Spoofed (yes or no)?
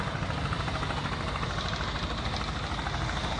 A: no